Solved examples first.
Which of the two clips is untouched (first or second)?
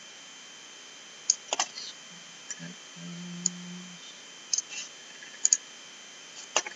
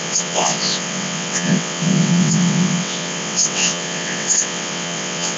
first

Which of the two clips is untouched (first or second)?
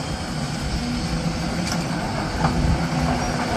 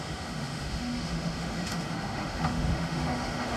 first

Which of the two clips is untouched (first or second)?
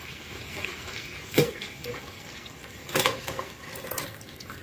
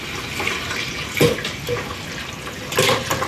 second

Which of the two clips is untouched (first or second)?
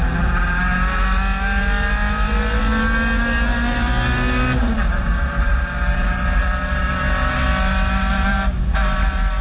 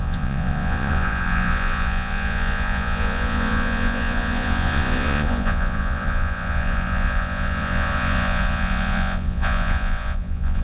first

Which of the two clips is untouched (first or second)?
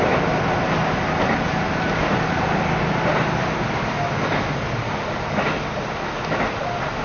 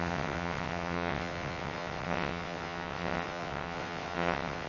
first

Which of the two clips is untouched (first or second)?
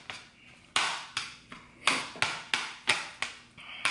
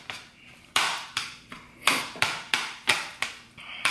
first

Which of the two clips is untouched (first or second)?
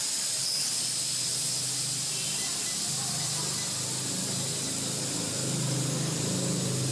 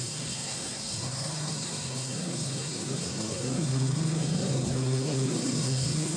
first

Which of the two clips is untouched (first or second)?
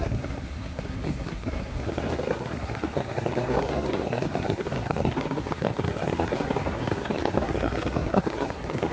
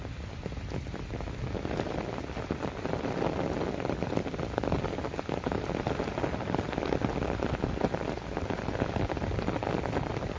second